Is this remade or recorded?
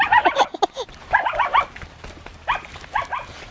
recorded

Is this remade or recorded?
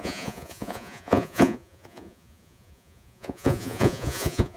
remade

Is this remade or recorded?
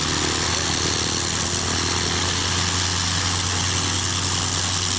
recorded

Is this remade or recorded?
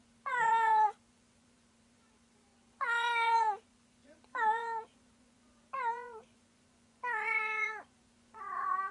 remade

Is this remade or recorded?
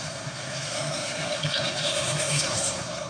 remade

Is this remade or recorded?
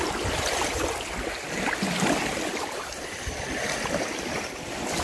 recorded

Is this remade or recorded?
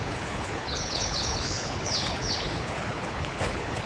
remade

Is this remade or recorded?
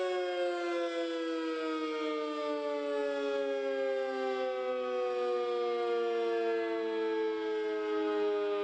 recorded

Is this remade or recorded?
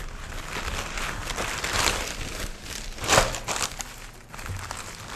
recorded